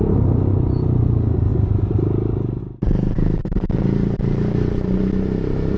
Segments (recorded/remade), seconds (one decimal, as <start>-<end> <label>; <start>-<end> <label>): 0.0-5.8 recorded